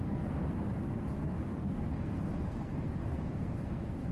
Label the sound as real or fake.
fake